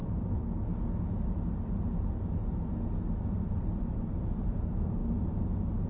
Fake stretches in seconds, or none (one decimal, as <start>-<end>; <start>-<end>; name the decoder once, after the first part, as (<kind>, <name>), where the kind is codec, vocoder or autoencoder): 3.5-5.0 (vocoder, BigVGAN v2)